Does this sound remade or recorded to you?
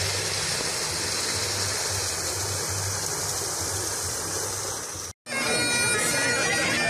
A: recorded